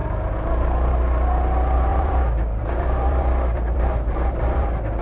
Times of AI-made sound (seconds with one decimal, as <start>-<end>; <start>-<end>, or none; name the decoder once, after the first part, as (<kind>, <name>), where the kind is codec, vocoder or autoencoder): 1.9-5.0 (vocoder, BigVGAN v2)